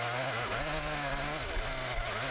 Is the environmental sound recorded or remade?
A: recorded